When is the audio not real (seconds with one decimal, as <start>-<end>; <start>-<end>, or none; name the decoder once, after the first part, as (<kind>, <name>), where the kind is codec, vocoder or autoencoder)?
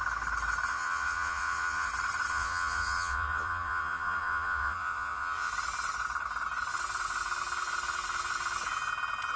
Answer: 0.7-1.9 (vocoder, Vocos); 2.3-5.5